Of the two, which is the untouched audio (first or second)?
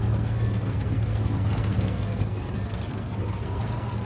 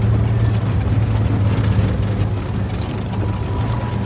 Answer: second